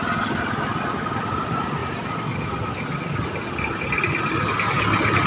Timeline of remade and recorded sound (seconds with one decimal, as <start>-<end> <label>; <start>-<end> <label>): 0.0-5.3 recorded